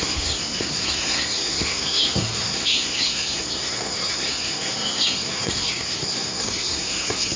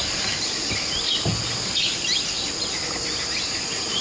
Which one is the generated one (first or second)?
first